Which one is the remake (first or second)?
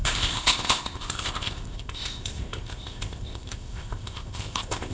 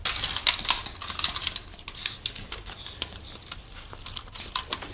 first